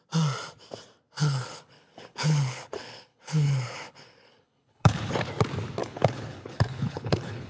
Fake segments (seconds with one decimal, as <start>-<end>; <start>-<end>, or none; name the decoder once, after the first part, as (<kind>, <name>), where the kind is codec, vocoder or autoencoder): 1.2-5.1 (codec, HILCodec); 5.8-7.5